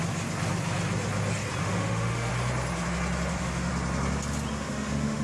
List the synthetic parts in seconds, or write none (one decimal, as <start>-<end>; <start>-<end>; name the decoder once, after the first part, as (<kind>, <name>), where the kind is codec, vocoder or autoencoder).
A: 1.6-2.3 (autoencoder, DAC-VAE); 3.3-3.7; 4.5-5.2